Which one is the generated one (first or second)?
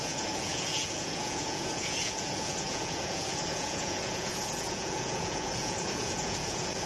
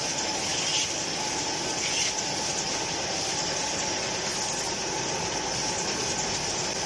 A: first